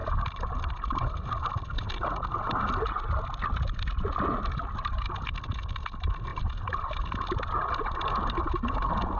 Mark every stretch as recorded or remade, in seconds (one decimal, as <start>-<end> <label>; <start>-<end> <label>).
0.0-9.2 recorded